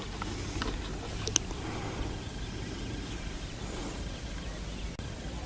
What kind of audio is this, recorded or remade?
recorded